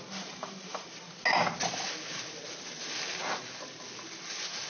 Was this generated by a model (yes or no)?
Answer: no